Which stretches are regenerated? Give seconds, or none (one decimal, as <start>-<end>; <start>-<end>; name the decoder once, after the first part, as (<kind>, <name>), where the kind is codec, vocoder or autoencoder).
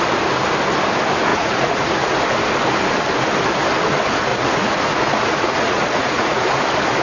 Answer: 1.3-2.2 (vocoder, Vocos); 4.3-6.6